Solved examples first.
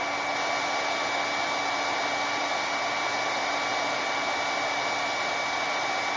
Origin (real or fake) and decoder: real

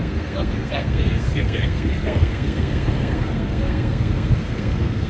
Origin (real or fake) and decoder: fake, codec, SNAC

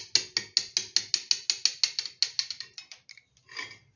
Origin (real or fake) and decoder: real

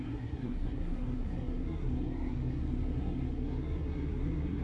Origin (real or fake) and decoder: fake, codec, SNAC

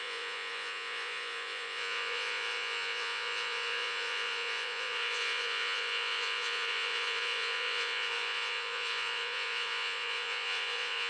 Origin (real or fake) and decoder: fake, vocoder, Vocos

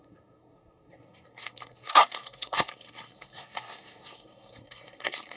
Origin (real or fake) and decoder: fake, codec, SNAC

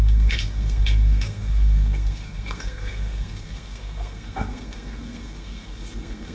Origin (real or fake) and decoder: fake, codec, SNAC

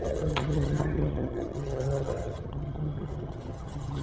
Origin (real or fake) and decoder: fake, vocoder, HiFi-GAN